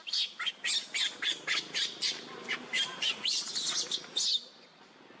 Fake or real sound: real